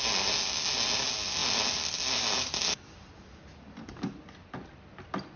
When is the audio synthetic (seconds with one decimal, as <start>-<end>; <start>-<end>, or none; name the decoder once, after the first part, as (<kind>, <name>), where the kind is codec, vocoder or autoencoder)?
none